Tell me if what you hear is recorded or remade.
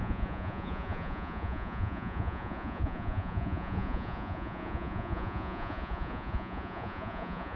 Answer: remade